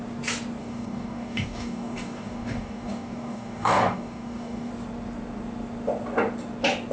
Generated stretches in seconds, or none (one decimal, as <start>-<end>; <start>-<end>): 0.6-4.7